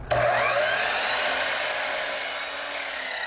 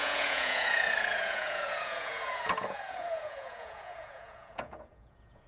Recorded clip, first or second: first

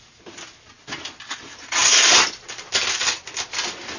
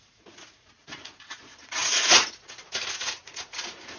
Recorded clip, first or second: first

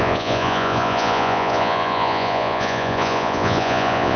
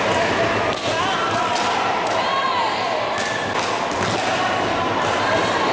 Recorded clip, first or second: second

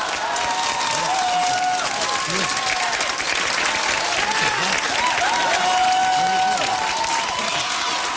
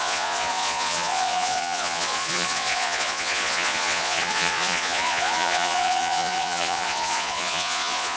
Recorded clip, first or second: first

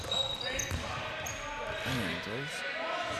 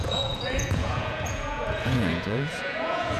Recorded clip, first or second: first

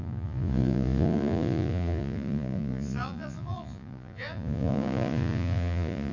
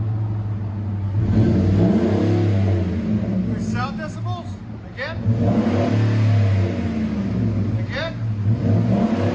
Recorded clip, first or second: second